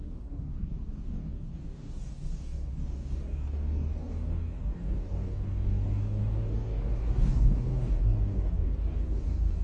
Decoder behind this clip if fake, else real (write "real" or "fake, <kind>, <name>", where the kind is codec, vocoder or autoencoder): fake, codec, DAC